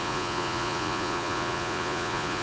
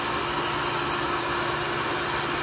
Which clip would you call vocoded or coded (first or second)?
first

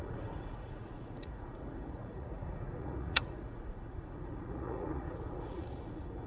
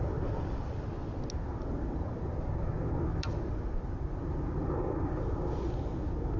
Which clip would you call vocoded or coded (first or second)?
first